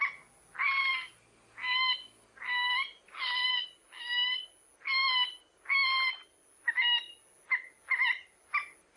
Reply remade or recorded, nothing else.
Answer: recorded